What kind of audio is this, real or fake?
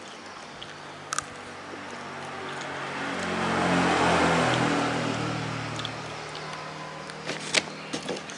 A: real